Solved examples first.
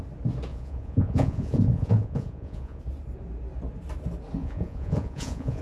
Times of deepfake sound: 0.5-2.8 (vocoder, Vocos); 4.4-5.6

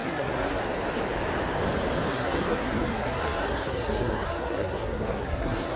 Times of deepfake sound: 0.0-0.6 (codec, SNAC); 2.1-5.8

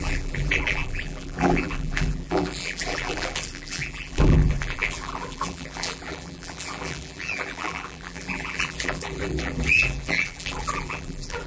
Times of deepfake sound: 0.0-11.5 (vocoder, BigVGAN v2)